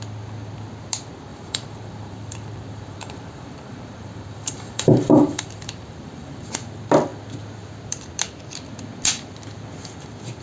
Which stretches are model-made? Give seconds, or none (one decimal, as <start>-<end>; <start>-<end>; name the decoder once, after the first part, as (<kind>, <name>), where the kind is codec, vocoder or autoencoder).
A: 1.3-6.5 (vocoder, BigVGAN v2)